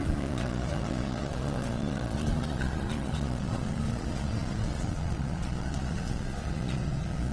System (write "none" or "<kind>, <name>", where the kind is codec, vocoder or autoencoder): vocoder, Vocos